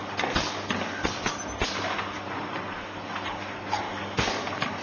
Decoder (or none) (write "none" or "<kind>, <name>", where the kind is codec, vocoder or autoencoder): none